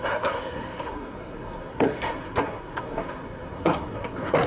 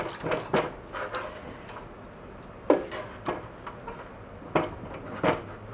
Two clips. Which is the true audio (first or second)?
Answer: second